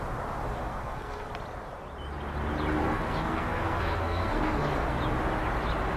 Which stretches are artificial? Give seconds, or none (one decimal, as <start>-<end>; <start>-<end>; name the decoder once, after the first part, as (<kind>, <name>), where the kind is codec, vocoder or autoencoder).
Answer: 0.6-1.3 (codec, SNAC); 2.8-5.0